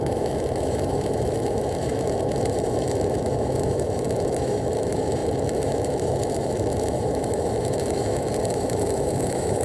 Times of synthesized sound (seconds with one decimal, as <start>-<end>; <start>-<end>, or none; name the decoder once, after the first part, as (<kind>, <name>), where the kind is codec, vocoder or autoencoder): 0.0-9.6 (autoencoder, DAC-VAE)